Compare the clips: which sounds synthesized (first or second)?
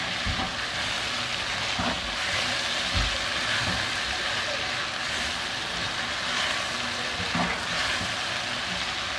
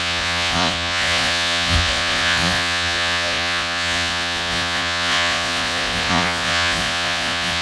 second